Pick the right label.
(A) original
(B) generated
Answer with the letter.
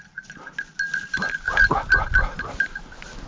A